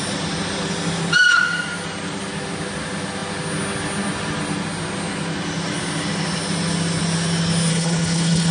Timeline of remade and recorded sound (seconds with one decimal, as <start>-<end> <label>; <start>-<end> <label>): 0.0-7.7 recorded; 7.7-8.5 remade